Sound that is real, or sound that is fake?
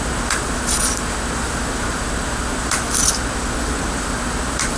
real